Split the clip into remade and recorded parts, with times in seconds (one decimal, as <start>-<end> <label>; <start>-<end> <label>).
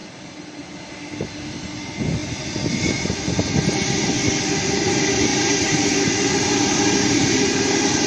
0.0-5.3 recorded; 5.3-7.6 remade; 7.6-8.1 recorded